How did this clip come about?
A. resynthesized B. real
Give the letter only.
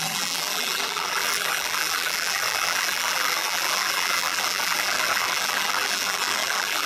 A